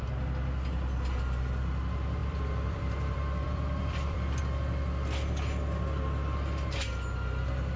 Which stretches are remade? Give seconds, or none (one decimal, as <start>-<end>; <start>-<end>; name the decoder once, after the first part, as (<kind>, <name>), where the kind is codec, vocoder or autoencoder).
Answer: 2.2-4.4 (vocoder, BigVGAN v2)